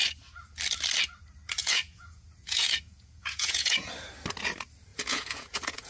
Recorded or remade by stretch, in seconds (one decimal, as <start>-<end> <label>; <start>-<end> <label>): 0.0-1.6 recorded; 1.6-3.9 remade; 3.9-4.9 recorded; 4.9-5.9 remade